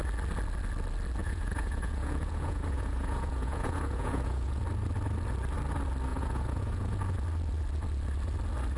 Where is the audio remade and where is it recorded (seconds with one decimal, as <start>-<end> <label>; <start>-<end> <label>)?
0.0-1.2 recorded; 1.2-4.6 remade; 4.6-6.1 recorded; 6.1-7.0 remade; 7.0-8.8 recorded